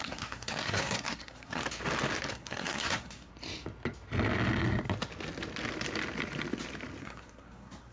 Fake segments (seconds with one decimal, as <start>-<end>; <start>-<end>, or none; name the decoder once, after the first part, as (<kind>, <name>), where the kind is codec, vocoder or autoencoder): 0.0-1.6 (codec, SNAC); 2.3-3.3; 7.0-7.9